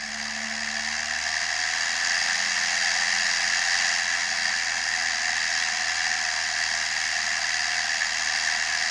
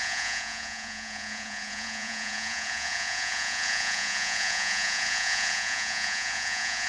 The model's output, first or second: second